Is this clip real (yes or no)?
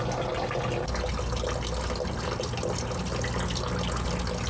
yes